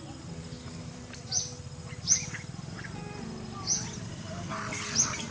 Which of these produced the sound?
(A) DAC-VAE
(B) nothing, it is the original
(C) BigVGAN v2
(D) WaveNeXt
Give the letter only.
B